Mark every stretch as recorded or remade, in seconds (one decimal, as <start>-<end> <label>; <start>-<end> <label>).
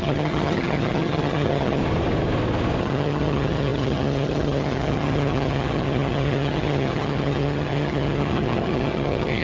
0.0-1.8 remade; 1.8-2.8 recorded; 2.8-9.4 remade